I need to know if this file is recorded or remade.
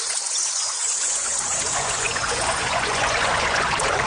remade